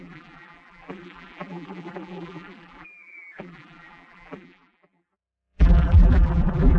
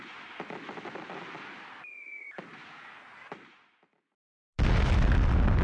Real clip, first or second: second